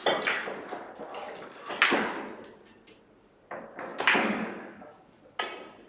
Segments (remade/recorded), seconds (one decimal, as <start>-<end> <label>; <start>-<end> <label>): 0.0-1.1 recorded; 1.1-1.7 remade; 1.7-3.9 recorded; 3.9-5.2 remade; 5.2-5.9 recorded